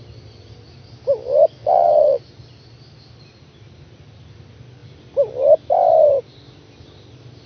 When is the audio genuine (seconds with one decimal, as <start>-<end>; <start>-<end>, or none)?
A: 0.0-1.6; 2.2-7.5